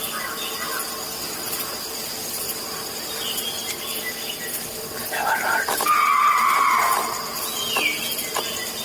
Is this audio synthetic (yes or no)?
no